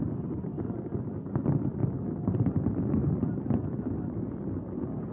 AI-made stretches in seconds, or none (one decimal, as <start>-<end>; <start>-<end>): none